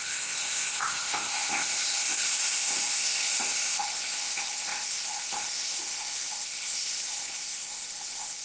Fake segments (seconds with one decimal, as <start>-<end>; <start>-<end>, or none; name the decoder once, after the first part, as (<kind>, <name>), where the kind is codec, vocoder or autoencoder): 0.0-8.4 (codec, ZipCodec)

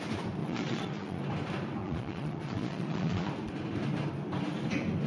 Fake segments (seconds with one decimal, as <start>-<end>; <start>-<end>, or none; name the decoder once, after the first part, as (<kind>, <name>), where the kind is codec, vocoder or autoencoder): 0.4-1.2 (vocoder, Vocos); 1.8-3.3

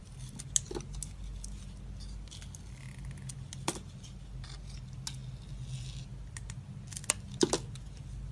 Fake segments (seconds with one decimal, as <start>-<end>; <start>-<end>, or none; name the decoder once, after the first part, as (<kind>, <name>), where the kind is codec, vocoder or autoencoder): none

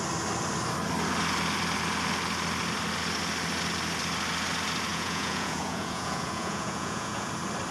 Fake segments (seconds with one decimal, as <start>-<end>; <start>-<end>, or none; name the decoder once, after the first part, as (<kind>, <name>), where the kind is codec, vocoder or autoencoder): 4.9-7.3 (vocoder, Vocos)

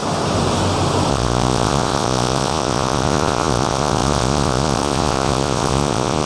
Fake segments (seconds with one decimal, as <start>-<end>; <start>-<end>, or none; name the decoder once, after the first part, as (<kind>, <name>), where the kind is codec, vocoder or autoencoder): 1.1-6.3 (vocoder, Vocos)

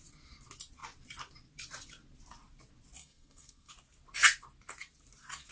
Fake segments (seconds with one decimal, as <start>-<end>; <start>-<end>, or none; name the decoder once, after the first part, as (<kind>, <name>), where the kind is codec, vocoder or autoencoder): 3.0-3.7 (codec, SNAC)

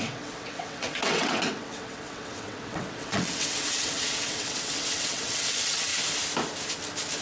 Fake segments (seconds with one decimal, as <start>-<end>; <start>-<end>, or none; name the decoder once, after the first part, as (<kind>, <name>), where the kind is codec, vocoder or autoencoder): 0.0-5.9 (vocoder, WaveNeXt)

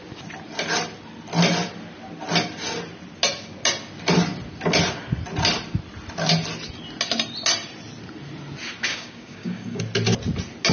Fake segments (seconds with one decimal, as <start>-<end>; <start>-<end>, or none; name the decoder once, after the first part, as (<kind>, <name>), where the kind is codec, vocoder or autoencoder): 8.9-9.8 (codec, DAC)